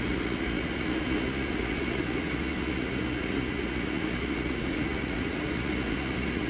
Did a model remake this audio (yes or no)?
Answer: yes